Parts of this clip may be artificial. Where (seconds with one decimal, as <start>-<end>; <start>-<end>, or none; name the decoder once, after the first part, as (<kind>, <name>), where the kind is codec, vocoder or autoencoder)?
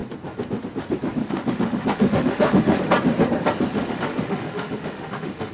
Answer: 1.2-2.8 (autoencoder, DAC-VAE); 3.7-5.5